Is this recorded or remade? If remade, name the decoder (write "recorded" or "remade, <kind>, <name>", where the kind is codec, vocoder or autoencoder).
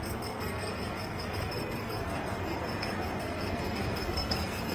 remade, codec, SNAC